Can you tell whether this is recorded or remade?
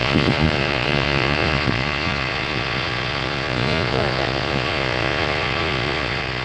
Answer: remade